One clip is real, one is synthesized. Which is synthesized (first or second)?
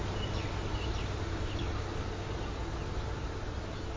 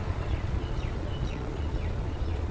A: second